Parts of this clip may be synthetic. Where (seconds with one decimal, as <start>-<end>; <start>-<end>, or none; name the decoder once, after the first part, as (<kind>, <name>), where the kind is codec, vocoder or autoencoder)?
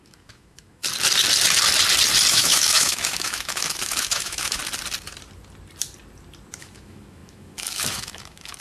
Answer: 0.0-0.8 (autoencoder, DAC-VAE); 2.3-4.6; 6.6-8.6